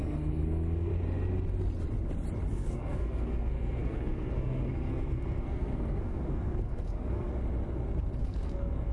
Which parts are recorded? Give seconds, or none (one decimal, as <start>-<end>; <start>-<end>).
0.9-2.5; 7.3-8.2